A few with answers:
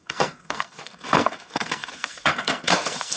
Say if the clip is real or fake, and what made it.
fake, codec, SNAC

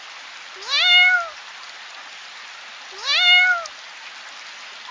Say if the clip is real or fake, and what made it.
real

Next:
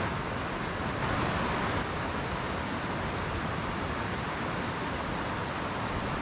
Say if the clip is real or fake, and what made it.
real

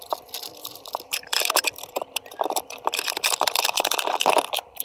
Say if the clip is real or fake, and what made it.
fake, vocoder, BigVGAN v2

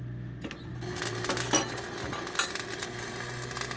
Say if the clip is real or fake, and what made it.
real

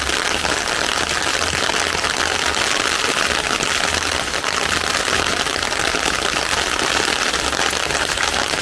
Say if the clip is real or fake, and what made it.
real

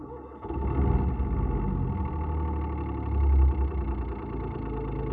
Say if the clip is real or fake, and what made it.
real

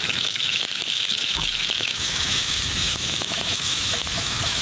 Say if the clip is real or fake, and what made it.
fake, autoencoder, DAC-VAE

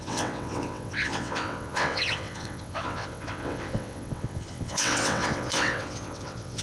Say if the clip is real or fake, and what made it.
fake, vocoder, WaveNeXt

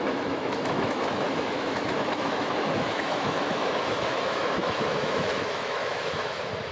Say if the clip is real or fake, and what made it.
fake, autoencoder, DAC-VAE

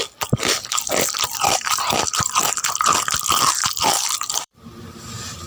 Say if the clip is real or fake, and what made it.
fake, vocoder, BigVGAN v2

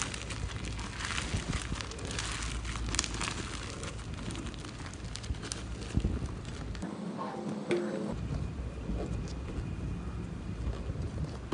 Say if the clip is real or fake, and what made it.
real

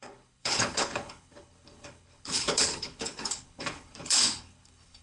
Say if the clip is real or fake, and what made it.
fake, codec, HILCodec